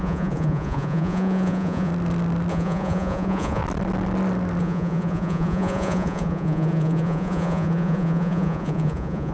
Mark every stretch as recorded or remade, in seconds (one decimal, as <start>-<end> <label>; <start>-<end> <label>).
0.0-1.9 remade; 1.9-2.5 recorded; 2.5-3.6 remade; 3.6-4.6 recorded; 4.6-9.3 remade